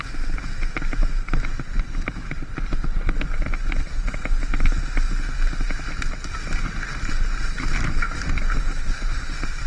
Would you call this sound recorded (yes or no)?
yes